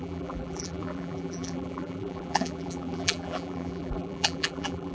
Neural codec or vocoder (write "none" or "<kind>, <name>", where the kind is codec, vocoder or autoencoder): vocoder, BigVGAN v2